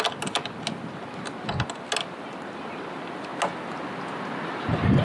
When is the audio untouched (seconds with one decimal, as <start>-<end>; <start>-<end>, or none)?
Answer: 0.0-5.0